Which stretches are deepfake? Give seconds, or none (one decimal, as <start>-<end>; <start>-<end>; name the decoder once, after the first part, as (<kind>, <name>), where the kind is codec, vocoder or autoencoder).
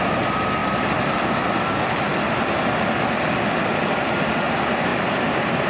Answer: none